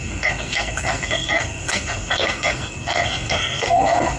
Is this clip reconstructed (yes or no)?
yes